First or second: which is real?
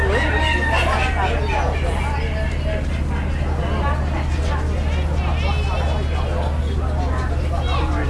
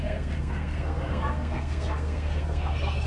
first